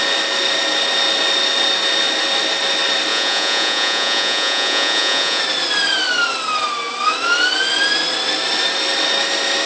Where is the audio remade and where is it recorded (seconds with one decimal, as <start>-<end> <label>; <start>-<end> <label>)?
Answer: 0.0-3.1 recorded; 3.1-5.4 remade; 5.4-9.7 recorded